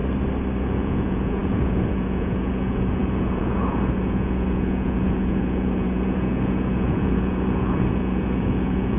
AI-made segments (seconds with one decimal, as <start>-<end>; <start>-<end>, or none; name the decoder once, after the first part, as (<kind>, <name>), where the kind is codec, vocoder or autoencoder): 0.6-9.0 (vocoder, Vocos)